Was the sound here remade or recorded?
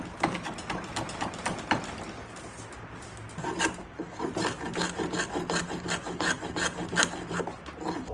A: recorded